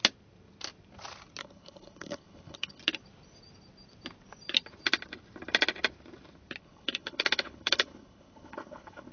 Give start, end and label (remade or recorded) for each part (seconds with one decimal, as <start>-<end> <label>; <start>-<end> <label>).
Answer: 0.0-1.4 recorded; 1.4-2.8 remade; 2.8-6.6 recorded; 6.6-9.1 remade

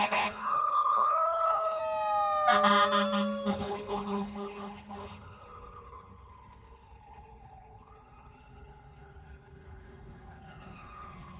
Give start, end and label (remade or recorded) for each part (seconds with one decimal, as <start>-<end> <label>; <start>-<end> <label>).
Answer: 0.0-1.8 remade; 1.8-3.5 recorded; 3.5-11.4 remade

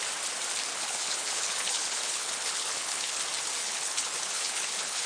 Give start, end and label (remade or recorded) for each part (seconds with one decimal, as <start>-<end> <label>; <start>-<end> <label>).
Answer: 0.0-0.7 recorded; 0.7-3.2 remade; 3.2-3.6 recorded; 3.6-5.1 remade

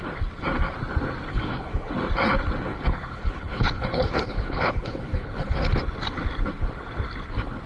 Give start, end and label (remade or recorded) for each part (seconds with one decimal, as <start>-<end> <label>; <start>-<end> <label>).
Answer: 0.0-1.3 recorded; 1.3-1.9 remade; 1.9-2.7 recorded; 2.7-5.6 remade; 5.6-7.7 recorded

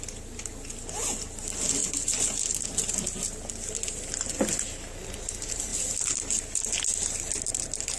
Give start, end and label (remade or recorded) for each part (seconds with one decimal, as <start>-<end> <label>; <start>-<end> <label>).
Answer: 0.0-8.0 recorded

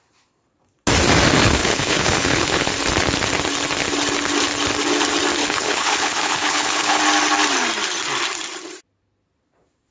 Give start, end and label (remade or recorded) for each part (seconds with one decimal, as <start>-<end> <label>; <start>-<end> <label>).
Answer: 0.0-1.6 recorded; 1.6-2.7 remade; 2.7-5.4 recorded; 5.4-7.0 remade; 7.0-9.9 recorded